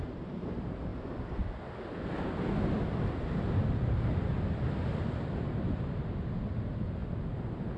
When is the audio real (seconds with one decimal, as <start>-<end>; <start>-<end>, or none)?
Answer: 0.0-7.8